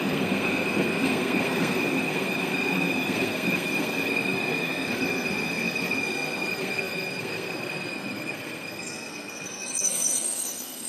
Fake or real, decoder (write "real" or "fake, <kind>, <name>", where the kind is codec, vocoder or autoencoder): fake, codec, SNAC